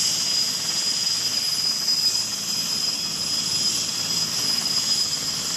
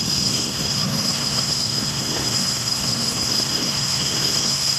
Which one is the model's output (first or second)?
second